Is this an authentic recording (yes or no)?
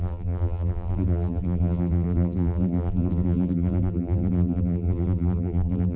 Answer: no